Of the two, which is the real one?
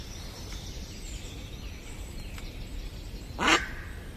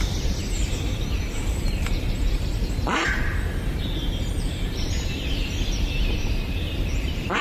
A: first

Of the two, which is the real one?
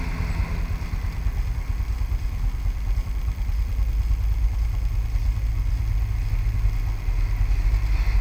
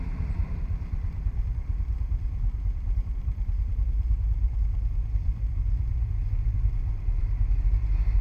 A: first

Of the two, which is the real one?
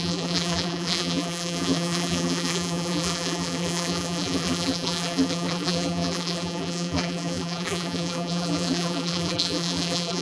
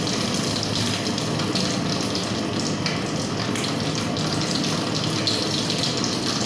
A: second